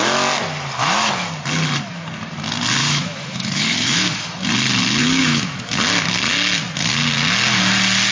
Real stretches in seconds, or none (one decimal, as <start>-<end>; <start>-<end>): 0.0-0.8; 1.3-2.8; 4.4-5.0; 5.8-8.1